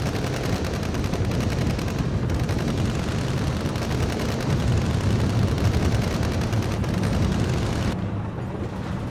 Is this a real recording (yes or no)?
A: yes